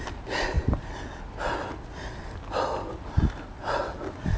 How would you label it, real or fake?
real